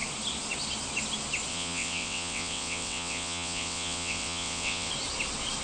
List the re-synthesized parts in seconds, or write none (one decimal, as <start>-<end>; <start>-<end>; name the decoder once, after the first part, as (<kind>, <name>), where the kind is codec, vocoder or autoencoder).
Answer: 1.5-4.9 (vocoder, WaveNeXt)